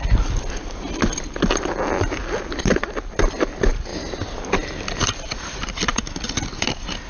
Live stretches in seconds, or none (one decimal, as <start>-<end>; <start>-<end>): 0.0-7.1